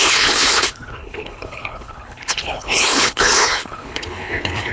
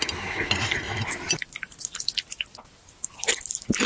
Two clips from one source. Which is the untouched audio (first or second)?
second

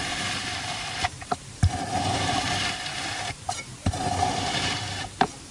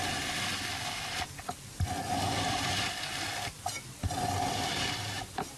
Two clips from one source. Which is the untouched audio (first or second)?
second